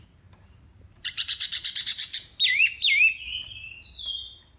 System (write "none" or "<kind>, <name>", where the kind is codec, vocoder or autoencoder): vocoder, BigVGAN v2